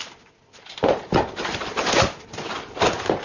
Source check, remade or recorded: recorded